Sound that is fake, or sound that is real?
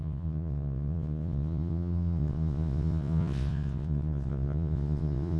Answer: fake